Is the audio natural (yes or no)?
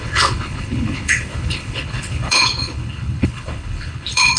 no